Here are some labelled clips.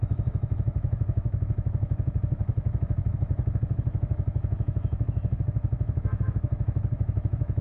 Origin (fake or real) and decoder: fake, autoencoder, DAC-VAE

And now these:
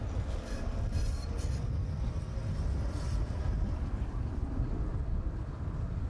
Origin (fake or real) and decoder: real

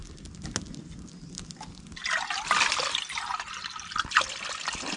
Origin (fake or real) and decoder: real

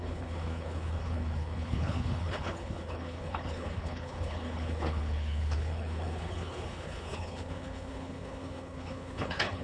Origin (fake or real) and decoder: fake, codec, HILCodec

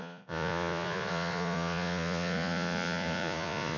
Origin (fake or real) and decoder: fake, vocoder, Vocos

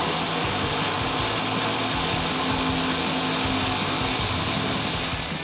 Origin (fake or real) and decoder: real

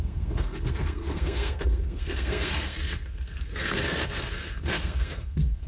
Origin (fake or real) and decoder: fake, codec, SNAC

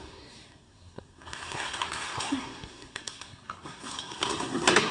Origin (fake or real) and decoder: fake, codec, SNAC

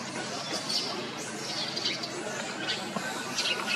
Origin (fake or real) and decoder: real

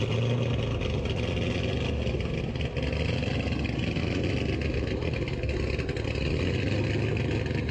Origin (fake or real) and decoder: real